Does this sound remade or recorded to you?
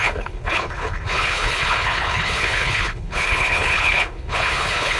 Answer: remade